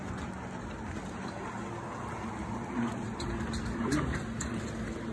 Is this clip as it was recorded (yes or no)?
yes